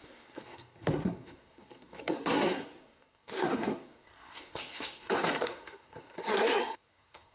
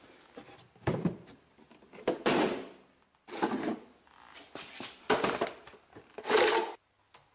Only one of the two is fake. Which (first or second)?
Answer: first